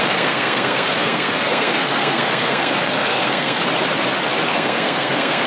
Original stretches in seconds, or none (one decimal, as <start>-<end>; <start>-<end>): 3.6-4.5